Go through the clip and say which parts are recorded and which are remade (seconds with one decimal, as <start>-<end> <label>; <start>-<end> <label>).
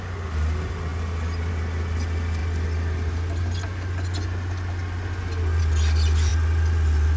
0.0-7.2 recorded